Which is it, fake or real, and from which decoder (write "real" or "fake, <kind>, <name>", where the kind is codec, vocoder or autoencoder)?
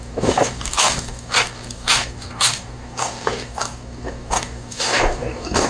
fake, codec, DAC